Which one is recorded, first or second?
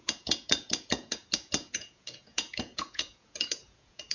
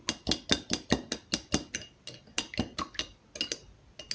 second